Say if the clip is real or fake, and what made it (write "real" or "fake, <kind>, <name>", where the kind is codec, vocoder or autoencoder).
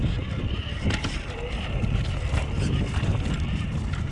real